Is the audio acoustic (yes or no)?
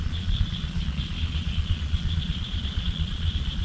no